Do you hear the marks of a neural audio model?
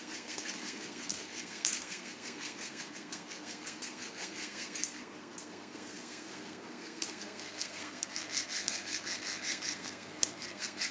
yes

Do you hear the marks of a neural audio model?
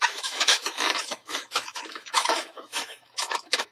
yes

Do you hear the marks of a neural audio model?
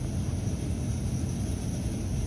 no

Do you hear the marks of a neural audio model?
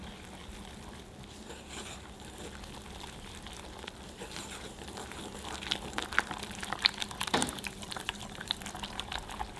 yes